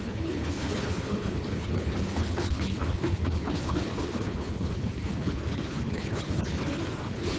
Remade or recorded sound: remade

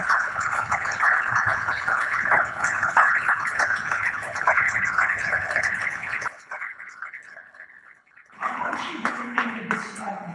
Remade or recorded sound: remade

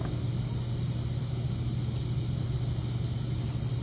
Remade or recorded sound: recorded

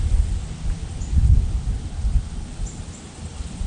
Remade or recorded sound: recorded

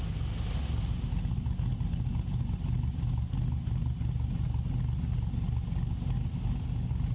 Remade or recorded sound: recorded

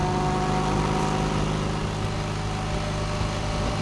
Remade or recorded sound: recorded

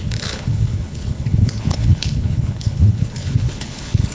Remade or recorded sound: remade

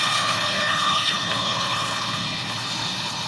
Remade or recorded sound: remade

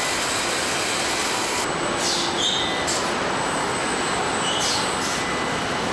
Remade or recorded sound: recorded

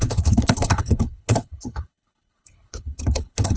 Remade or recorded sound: remade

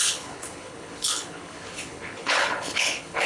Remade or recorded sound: remade